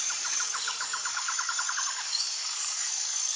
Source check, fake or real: fake